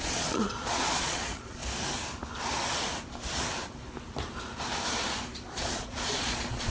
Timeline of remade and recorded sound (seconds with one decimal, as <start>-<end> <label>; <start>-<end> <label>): 0.0-1.6 remade; 1.6-5.6 recorded; 5.6-6.7 remade